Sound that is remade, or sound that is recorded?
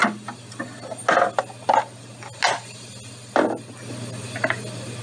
recorded